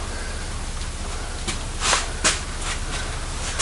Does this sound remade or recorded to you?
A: recorded